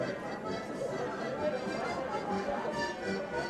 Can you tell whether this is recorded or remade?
recorded